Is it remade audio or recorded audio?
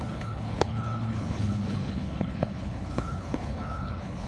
remade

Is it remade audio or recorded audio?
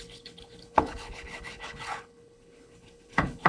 remade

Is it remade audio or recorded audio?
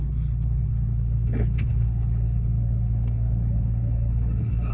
remade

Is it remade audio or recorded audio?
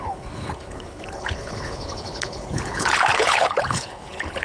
remade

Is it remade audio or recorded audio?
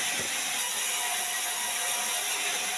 recorded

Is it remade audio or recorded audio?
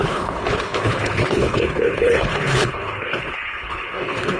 remade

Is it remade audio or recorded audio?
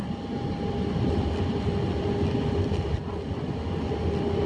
recorded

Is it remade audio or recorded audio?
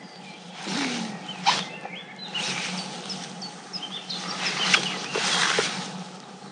recorded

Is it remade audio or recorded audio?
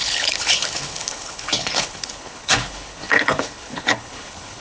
remade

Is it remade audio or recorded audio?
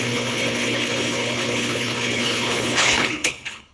remade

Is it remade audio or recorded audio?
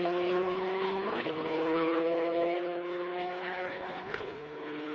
remade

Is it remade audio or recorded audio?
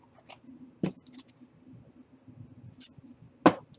recorded